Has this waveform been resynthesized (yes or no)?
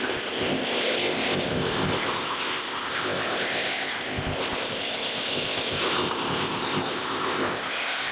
yes